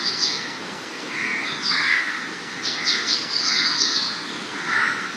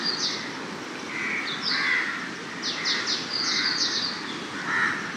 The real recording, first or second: second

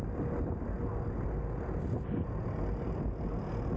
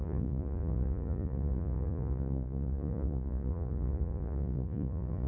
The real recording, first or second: first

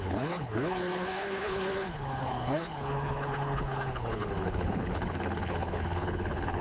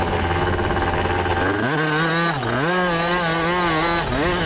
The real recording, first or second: second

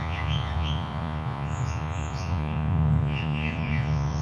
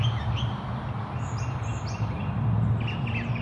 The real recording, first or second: second